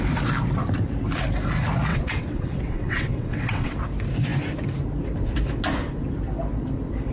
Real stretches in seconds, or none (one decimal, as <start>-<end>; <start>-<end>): 0.0-1.9; 3.8-7.1